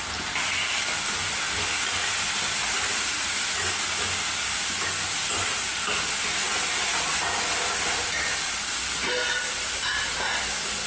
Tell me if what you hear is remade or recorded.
recorded